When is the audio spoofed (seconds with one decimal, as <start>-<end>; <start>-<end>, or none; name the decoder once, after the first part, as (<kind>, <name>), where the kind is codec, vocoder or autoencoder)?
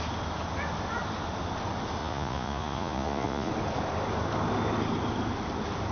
2.0-3.5 (vocoder, Vocos)